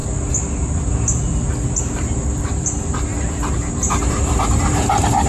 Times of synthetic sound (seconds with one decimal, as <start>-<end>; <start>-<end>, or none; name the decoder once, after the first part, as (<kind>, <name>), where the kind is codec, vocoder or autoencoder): 1.8-3.1 (vocoder, BigVGAN v2); 4.4-5.3